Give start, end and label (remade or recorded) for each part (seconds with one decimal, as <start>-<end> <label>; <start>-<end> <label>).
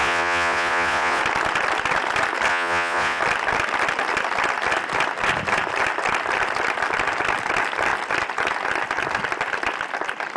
0.0-1.2 remade; 1.2-2.5 recorded; 2.5-3.2 remade; 3.2-10.4 recorded